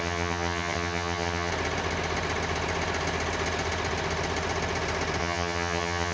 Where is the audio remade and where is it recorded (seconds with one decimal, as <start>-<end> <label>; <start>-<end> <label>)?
0.0-1.5 remade; 1.5-5.2 recorded; 5.2-6.1 remade